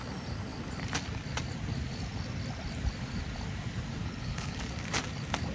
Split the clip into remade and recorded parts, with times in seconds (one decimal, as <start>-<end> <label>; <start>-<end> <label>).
0.0-4.0 recorded; 4.0-4.6 remade; 4.6-5.5 recorded